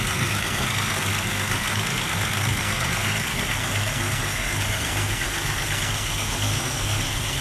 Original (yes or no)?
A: no